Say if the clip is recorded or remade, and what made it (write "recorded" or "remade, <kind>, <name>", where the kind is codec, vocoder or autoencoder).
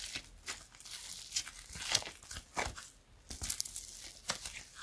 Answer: recorded